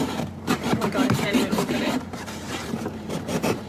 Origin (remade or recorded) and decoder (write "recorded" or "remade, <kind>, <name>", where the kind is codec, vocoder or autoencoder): remade, vocoder, BigVGAN v2